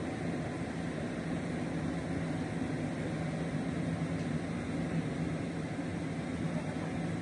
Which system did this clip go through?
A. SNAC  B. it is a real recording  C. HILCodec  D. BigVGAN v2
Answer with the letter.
B